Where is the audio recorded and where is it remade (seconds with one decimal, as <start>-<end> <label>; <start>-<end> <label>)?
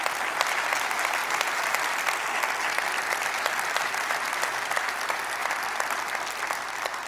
0.0-7.1 recorded